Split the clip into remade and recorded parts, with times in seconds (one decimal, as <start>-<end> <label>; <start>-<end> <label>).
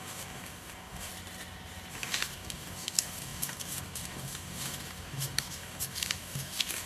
0.0-1.1 remade; 1.1-1.9 recorded; 1.9-6.9 remade